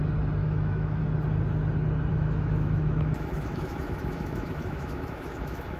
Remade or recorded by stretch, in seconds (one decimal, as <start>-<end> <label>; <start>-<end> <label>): 0.0-0.4 recorded; 0.4-1.0 remade; 1.0-2.1 recorded; 2.1-5.8 remade